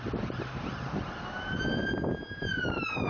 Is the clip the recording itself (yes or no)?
yes